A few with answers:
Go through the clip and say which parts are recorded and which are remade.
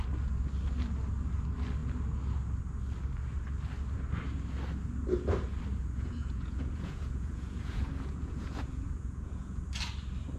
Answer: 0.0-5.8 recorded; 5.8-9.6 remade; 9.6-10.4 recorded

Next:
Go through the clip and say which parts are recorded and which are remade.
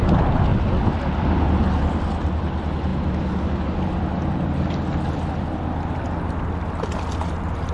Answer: 0.0-7.7 recorded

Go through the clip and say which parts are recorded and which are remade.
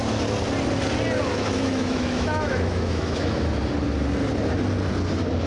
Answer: 0.0-1.3 recorded; 1.3-3.6 remade; 3.6-5.5 recorded